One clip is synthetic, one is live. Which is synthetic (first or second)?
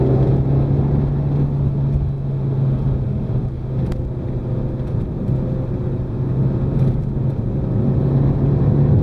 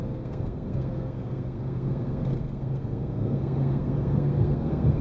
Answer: second